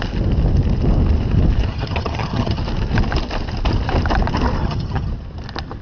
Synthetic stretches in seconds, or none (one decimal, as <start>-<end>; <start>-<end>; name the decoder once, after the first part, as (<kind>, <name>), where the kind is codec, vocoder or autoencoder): 1.7-2.6 (vocoder, HiFi-GAN); 4.6-5.1